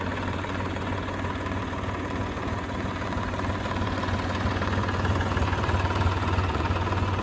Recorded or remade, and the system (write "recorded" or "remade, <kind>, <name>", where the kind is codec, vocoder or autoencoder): remade, vocoder, Vocos